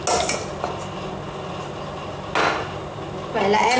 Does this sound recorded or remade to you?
recorded